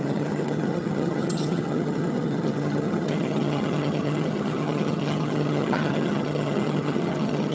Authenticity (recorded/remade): remade